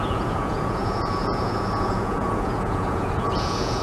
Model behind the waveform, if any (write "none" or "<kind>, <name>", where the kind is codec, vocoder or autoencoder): vocoder, Vocos